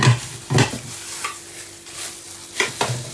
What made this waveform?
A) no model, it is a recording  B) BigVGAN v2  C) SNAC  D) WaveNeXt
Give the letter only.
A